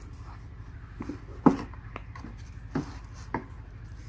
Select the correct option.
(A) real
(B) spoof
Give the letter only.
A